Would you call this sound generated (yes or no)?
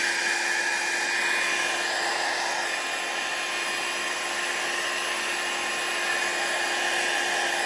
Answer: no